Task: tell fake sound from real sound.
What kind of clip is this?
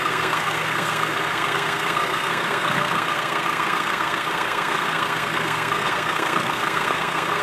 fake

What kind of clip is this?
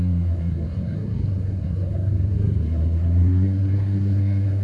fake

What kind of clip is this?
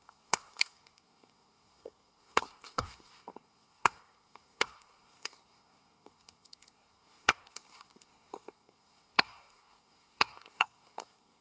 fake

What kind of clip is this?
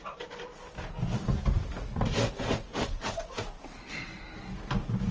real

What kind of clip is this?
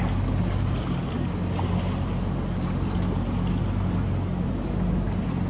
real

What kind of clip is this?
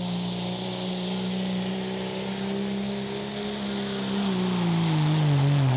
real